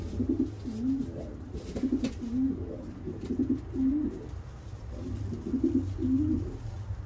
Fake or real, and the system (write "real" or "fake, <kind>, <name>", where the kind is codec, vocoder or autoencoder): real